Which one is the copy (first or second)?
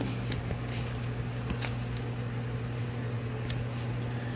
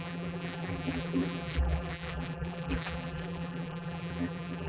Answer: second